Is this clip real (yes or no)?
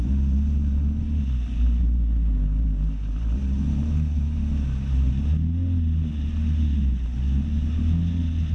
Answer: yes